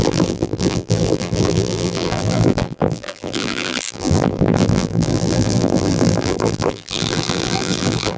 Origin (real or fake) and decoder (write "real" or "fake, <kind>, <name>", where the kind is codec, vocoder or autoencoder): fake, vocoder, BigVGAN v2